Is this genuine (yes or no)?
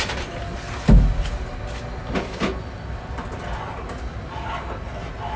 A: yes